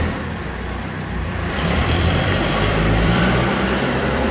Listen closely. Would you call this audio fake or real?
fake